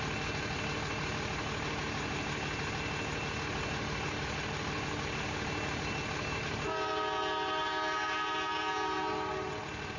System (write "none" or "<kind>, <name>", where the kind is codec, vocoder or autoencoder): none